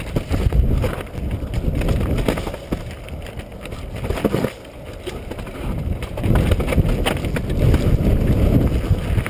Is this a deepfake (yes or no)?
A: no